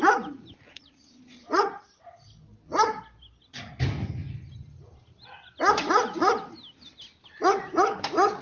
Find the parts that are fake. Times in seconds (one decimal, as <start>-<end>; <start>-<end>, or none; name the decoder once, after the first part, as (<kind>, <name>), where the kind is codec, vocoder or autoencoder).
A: none